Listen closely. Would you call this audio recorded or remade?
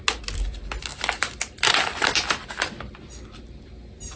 recorded